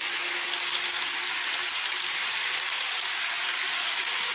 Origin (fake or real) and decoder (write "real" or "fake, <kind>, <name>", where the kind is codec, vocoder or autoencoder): real